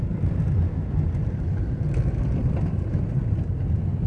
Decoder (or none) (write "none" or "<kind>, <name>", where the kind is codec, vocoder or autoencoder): vocoder, BigVGAN v2